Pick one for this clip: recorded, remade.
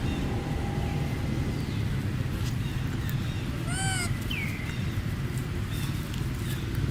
recorded